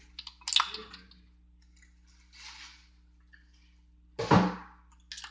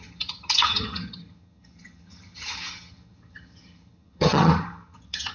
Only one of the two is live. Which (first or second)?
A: first